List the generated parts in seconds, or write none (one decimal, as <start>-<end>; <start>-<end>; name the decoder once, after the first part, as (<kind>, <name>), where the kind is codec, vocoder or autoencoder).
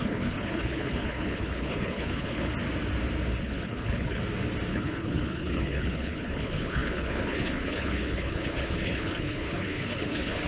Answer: 0.0-2.5 (codec, HILCodec); 3.4-4.2; 4.7-10.5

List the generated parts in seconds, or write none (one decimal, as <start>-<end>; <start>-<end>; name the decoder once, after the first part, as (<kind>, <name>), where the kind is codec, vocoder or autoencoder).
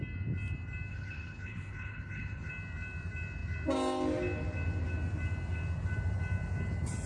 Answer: 0.9-2.5 (codec, HILCodec)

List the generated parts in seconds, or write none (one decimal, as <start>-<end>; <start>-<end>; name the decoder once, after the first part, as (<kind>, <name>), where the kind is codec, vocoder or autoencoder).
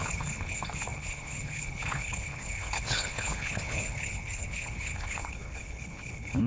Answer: 0.0-6.5 (codec, HILCodec)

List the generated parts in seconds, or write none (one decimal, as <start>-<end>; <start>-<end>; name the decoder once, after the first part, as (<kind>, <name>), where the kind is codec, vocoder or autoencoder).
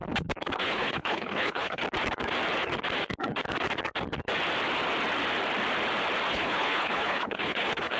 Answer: 0.6-1.8 (codec, HILCodec); 6.3-8.0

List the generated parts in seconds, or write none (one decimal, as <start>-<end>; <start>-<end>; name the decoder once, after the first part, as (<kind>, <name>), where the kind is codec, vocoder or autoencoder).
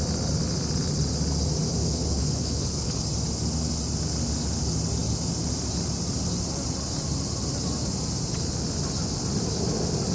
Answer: 1.8-3.0 (codec, HILCodec)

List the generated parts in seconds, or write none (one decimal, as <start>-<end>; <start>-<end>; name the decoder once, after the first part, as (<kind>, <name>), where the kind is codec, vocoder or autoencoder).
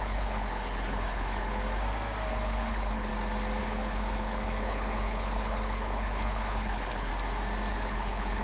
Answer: 0.0-1.6 (codec, HILCodec); 2.3-3.1; 3.6-7.1; 7.7-8.4